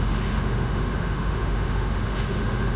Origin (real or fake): fake